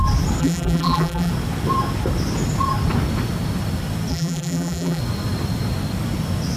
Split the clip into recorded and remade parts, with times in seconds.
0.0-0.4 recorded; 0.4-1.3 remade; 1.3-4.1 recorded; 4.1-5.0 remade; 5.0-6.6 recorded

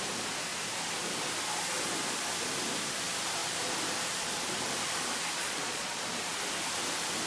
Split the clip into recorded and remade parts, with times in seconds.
0.0-5.4 recorded; 5.4-6.0 remade; 6.0-7.3 recorded

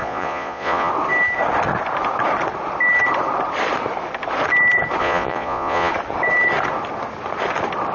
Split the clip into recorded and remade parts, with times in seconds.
0.0-0.9 remade; 0.9-5.0 recorded; 5.0-5.9 remade; 5.9-7.9 recorded

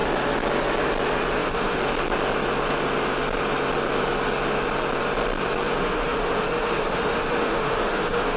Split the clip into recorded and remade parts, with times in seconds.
0.0-1.4 recorded; 1.4-1.8 remade; 1.8-5.8 recorded; 5.8-8.4 remade